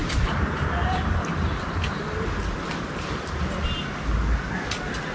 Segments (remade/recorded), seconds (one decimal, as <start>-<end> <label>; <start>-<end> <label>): 0.0-1.5 remade; 1.5-5.1 recorded